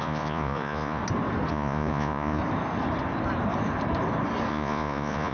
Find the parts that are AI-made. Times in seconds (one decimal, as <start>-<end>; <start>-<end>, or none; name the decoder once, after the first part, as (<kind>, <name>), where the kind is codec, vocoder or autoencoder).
0.0-1.0 (vocoder, Vocos); 1.5-2.4; 4.5-5.3